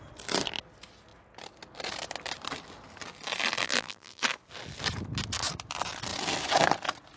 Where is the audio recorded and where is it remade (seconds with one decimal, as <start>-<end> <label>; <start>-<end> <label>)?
0.0-3.6 recorded; 3.6-4.2 remade; 4.2-7.2 recorded